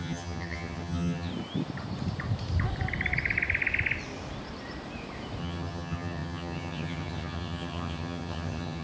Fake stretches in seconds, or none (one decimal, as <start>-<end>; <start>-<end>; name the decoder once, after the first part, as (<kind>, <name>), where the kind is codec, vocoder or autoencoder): 0.0-1.3 (vocoder, HiFi-GAN); 5.4-8.8